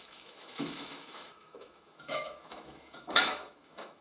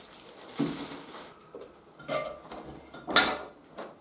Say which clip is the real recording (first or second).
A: second